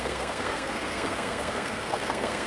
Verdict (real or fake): fake